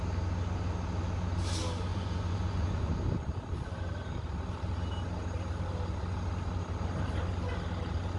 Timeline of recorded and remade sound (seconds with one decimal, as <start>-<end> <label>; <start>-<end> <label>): 0.0-1.9 recorded; 1.9-2.9 remade; 2.9-8.2 recorded

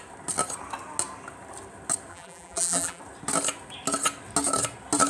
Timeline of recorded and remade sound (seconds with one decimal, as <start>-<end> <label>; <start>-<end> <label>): 0.0-2.1 recorded; 2.1-3.0 remade; 3.0-5.1 recorded